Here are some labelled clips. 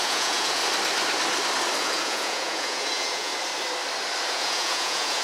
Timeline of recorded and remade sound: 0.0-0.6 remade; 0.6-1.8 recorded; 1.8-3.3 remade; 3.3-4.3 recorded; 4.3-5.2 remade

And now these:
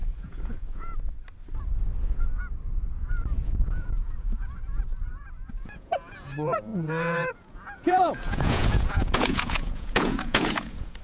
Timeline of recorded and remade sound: 0.0-0.9 remade; 0.9-3.5 recorded; 3.5-4.9 remade; 4.9-5.5 recorded; 5.5-11.0 remade

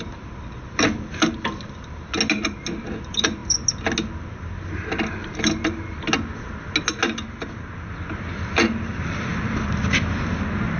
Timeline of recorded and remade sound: 0.0-10.8 recorded

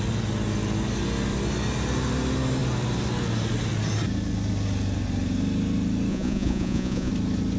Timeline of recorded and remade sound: 0.0-6.1 recorded; 6.1-7.1 remade; 7.1-7.6 recorded

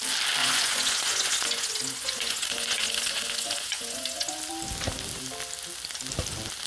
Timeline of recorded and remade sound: 0.0-0.4 recorded; 0.4-4.4 remade; 4.4-6.7 recorded

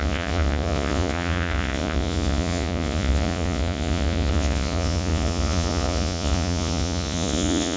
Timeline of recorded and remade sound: 0.0-7.8 remade